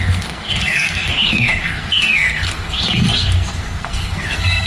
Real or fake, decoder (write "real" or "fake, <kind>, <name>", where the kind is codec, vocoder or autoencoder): fake, codec, SNAC